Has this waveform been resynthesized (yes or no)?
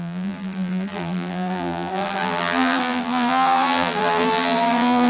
yes